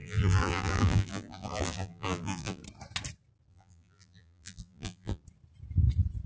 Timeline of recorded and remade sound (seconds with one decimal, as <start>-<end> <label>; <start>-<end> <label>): 0.0-2.6 remade; 2.6-3.5 recorded; 3.5-5.2 remade; 5.2-6.3 recorded